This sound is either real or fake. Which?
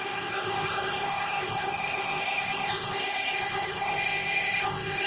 fake